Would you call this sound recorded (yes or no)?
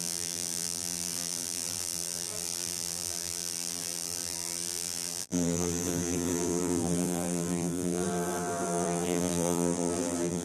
no